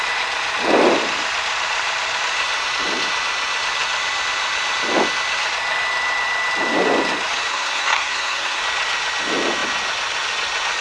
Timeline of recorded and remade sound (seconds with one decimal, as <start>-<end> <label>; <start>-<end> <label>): 0.0-7.5 recorded; 7.5-8.6 remade; 8.6-10.8 recorded